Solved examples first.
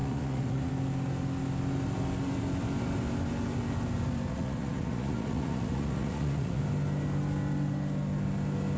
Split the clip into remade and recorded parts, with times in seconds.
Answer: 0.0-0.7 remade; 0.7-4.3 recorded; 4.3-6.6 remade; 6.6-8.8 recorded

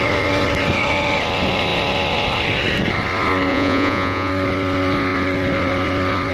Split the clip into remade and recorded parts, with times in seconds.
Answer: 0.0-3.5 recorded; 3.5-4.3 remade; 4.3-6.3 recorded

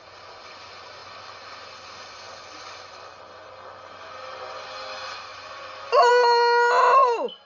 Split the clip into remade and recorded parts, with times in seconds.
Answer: 0.0-7.5 recorded

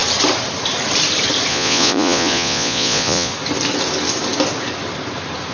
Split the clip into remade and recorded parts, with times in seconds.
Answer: 0.0-1.5 recorded; 1.5-3.3 remade; 3.3-5.5 recorded

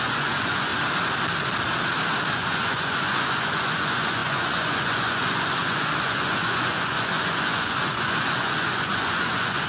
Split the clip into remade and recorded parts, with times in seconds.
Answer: 0.0-0.7 remade; 0.7-2.3 recorded; 2.3-9.7 remade

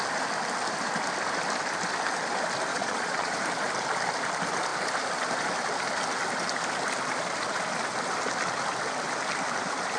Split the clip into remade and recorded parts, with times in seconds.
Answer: 0.0-2.7 recorded; 2.7-3.3 remade; 3.3-10.0 recorded